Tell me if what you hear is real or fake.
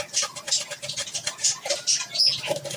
real